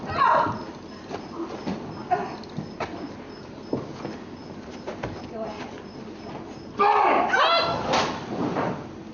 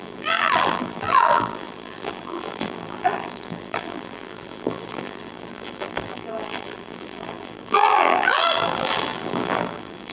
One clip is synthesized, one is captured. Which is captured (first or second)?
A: first